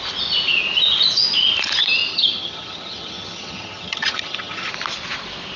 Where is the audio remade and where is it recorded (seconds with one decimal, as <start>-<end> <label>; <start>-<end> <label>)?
0.0-2.1 recorded; 2.1-4.7 remade; 4.7-5.6 recorded

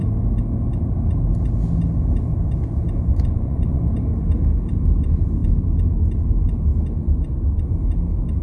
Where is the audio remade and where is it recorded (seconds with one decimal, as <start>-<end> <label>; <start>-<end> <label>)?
0.0-3.1 recorded; 3.1-3.8 remade; 3.8-8.4 recorded

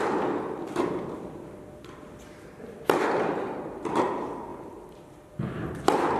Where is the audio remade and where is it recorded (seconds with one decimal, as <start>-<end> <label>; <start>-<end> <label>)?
0.0-6.2 recorded

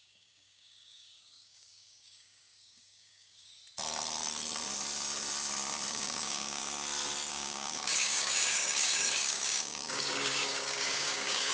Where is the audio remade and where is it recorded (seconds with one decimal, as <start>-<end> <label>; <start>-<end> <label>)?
0.0-3.6 remade; 3.6-5.9 recorded; 5.9-6.6 remade; 6.6-7.3 recorded; 7.3-11.5 remade

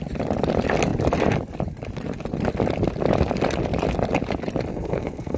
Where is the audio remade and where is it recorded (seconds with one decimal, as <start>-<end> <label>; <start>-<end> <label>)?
0.0-4.7 recorded; 4.7-5.4 remade

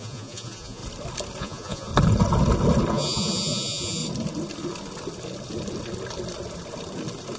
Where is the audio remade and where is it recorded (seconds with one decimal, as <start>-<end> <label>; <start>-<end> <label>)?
0.0-0.8 remade; 0.8-1.4 recorded; 1.4-1.9 remade; 1.9-2.9 recorded; 2.9-4.0 remade; 4.0-7.4 recorded

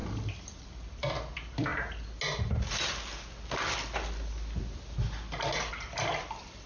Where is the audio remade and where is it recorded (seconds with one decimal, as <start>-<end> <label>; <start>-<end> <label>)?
0.0-1.7 remade; 1.7-5.7 recorded; 5.7-6.7 remade